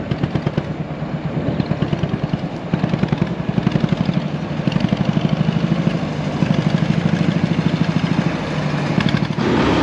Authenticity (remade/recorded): recorded